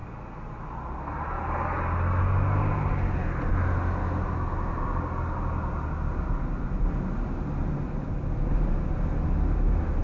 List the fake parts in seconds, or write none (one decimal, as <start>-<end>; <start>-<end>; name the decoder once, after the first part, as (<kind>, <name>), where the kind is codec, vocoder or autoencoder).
none